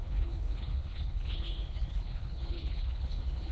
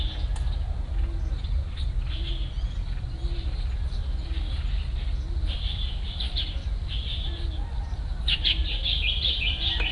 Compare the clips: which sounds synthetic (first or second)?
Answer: first